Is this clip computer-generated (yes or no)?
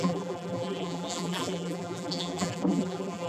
yes